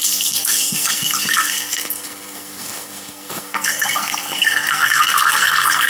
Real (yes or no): no